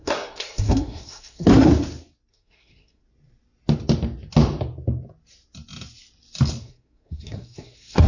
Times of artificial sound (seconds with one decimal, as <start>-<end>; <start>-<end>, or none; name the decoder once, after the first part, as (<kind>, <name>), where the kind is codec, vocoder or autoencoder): 0.0-1.7 (codec, SNAC); 2.3-3.0; 6.6-8.1